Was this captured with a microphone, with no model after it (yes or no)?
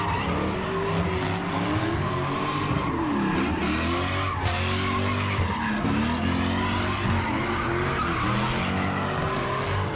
yes